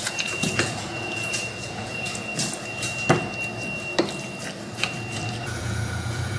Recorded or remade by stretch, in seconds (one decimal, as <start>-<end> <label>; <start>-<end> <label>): 0.0-2.3 remade; 2.3-5.4 recorded; 5.4-6.4 remade